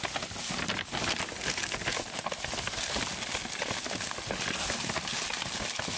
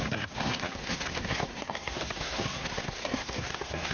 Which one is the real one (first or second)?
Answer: first